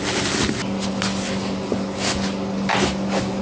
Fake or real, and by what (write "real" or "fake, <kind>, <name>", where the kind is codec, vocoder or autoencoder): real